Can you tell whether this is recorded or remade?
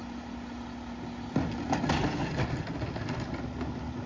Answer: recorded